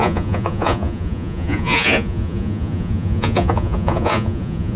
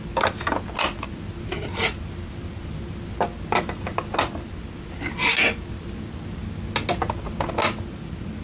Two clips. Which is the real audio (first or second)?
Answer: second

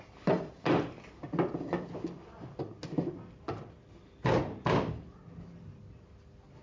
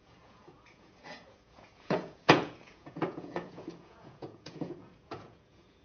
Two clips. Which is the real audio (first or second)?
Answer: first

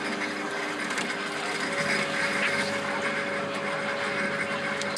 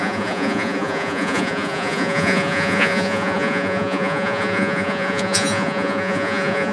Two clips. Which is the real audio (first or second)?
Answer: first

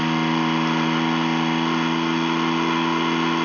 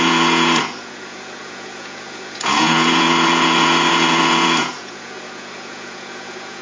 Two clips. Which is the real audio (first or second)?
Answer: first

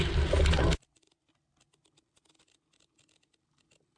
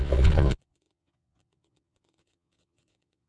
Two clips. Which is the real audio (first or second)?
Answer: first